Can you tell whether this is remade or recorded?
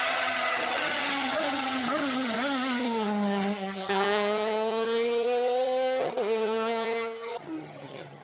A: remade